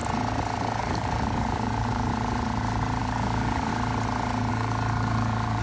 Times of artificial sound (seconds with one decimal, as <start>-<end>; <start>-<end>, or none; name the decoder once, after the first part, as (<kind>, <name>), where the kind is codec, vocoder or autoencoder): 0.8-2.1 (codec, DAC); 3.0-3.7; 4.5-5.6